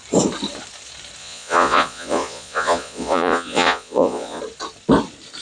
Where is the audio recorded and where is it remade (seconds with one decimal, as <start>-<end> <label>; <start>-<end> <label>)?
0.0-1.2 recorded; 1.2-4.4 remade; 4.4-5.4 recorded